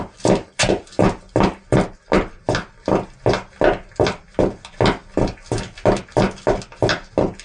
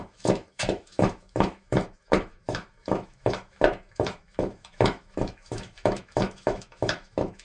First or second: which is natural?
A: first